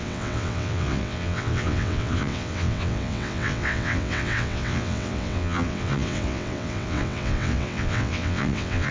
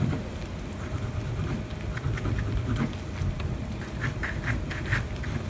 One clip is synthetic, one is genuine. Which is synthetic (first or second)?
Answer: first